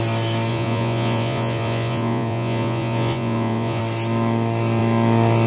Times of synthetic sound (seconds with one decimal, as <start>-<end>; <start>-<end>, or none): 0.5-3.8